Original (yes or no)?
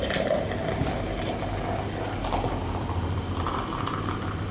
yes